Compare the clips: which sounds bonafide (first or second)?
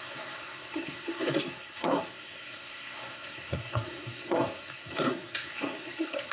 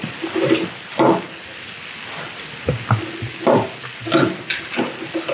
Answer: second